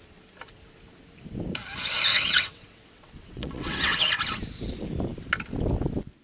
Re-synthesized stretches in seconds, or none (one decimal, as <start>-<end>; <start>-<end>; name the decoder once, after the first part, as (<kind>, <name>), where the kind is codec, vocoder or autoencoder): 2.1-4.0 (vocoder, WaveNeXt)